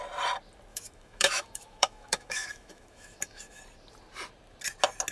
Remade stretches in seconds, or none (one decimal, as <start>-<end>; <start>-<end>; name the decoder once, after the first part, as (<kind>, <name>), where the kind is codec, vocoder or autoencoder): 0.7-3.6 (autoencoder, DAC-VAE)